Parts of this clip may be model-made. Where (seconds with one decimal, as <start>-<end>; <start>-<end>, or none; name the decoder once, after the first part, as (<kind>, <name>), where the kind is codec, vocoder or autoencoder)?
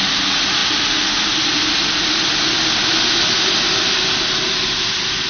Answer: none